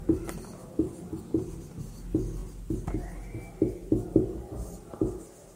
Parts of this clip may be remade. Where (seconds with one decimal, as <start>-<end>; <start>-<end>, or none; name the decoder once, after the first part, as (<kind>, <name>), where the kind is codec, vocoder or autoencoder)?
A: none